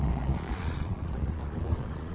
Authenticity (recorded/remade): remade